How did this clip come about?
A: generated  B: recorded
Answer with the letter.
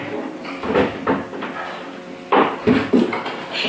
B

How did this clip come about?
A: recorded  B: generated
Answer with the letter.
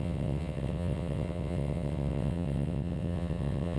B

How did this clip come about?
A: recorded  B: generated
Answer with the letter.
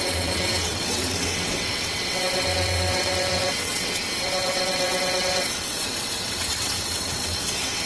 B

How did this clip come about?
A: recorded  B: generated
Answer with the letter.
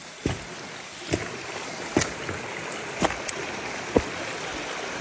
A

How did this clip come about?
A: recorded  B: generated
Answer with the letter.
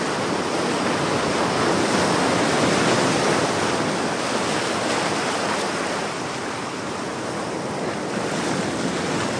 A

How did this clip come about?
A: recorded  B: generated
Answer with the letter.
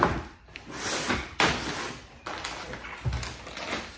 A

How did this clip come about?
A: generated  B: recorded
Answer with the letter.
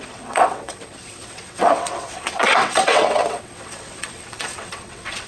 A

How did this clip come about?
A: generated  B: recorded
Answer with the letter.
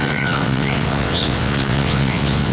A